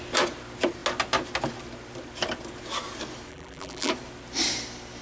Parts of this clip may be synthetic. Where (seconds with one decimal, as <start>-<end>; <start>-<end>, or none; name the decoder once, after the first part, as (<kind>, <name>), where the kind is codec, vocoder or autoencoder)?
3.3-3.9 (vocoder, BigVGAN v2)